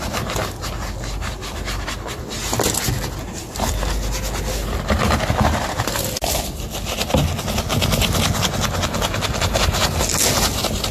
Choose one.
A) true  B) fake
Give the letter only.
A